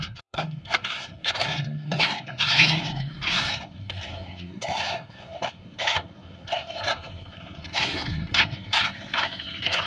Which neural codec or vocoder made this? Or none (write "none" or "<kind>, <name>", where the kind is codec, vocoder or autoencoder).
codec, SNAC